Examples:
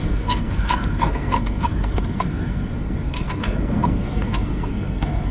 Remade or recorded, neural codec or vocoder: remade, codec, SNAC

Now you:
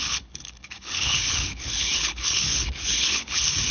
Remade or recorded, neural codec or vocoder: remade, codec, HILCodec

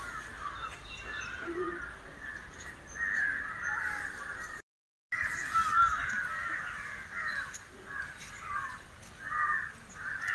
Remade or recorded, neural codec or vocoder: recorded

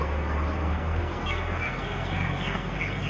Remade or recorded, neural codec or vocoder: remade, codec, SNAC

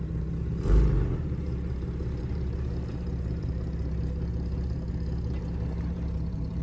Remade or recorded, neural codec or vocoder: remade, vocoder, BigVGAN v2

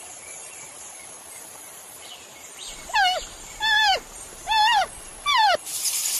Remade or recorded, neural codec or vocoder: remade, vocoder, BigVGAN v2